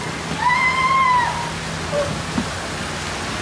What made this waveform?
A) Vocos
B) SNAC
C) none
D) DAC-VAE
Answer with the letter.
C